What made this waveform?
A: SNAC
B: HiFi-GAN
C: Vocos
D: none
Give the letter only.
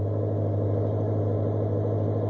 D